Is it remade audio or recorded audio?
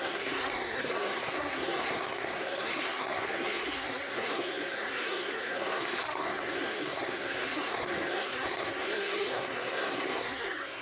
remade